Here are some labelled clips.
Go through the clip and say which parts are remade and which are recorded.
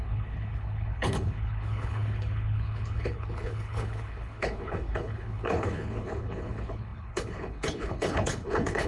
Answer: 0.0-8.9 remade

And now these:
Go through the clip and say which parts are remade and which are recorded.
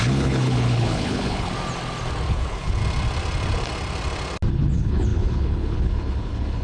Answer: 0.0-1.5 remade; 1.5-2.3 recorded; 2.3-2.8 remade; 2.8-4.5 recorded; 4.5-6.6 remade